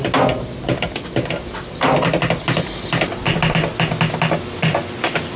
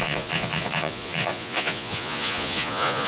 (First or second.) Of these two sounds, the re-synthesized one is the second